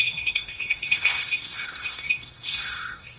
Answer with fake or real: fake